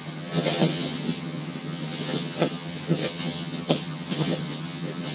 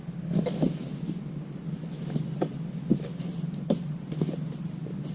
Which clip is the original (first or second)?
second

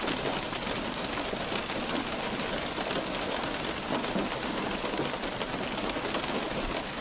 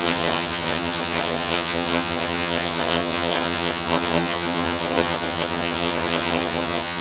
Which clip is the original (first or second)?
first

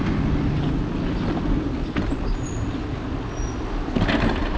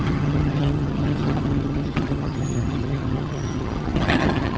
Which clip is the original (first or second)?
first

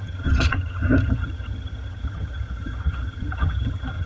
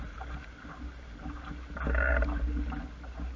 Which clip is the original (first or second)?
second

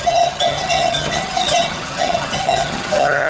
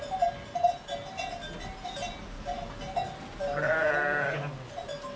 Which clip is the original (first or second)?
second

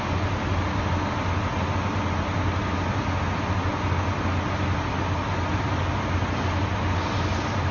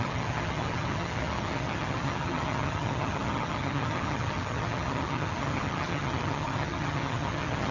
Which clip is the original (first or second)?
first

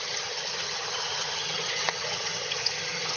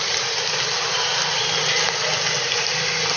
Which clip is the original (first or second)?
second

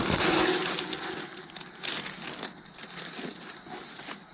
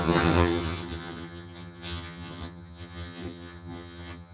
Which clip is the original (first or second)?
first